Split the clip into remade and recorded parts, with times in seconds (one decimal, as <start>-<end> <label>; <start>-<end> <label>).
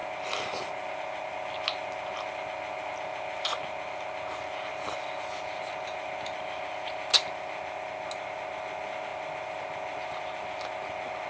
0.0-11.3 recorded